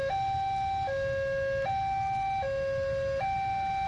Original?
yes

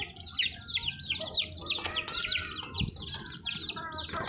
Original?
yes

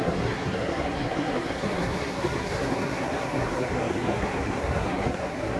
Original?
no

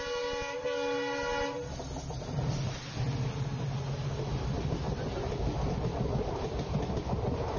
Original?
yes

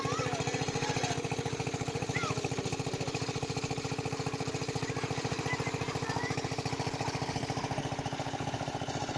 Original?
yes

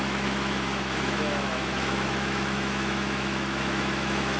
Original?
no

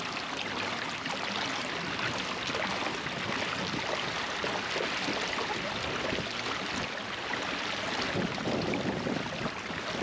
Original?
yes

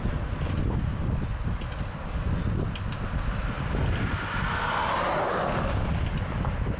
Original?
yes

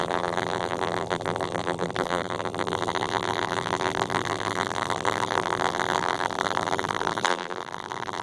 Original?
no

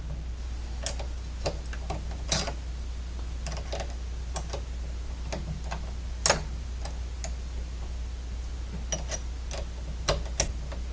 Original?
yes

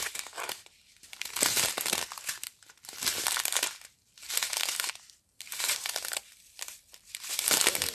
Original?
yes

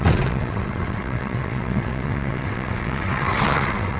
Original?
no